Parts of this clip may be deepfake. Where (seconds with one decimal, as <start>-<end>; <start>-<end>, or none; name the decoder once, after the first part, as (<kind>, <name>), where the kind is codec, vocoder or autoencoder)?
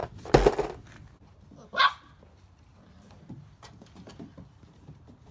none